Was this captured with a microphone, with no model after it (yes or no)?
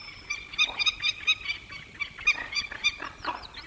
yes